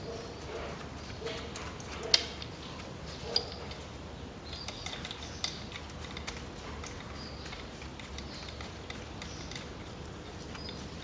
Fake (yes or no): no